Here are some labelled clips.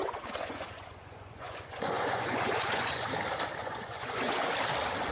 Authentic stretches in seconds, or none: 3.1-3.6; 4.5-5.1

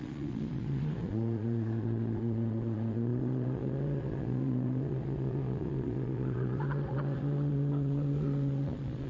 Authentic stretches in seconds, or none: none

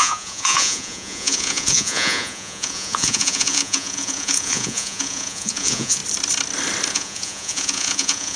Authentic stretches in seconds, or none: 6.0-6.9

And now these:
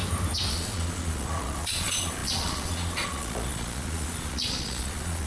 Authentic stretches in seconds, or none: 0.0-0.5

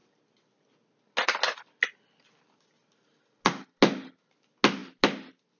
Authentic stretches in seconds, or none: 0.0-5.6